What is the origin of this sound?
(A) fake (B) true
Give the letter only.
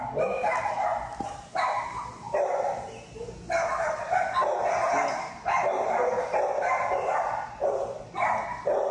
B